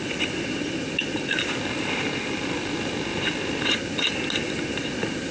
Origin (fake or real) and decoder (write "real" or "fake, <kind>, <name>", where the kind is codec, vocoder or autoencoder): real